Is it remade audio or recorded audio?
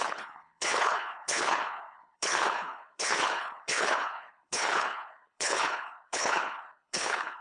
remade